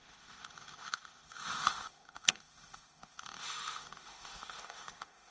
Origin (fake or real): fake